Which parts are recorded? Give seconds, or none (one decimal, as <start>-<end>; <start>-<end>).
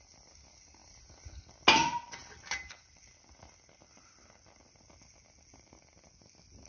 0.0-6.7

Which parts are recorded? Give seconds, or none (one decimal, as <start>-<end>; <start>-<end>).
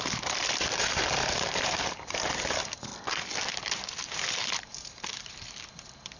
2.9-3.5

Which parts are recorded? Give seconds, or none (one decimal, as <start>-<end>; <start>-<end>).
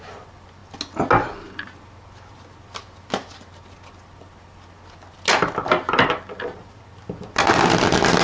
0.0-8.2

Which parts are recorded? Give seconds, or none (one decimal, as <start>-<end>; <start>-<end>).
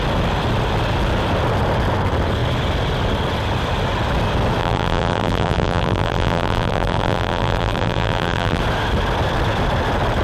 0.0-4.6; 8.6-10.2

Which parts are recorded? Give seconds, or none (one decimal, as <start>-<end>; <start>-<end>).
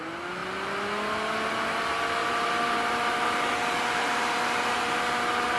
0.0-2.2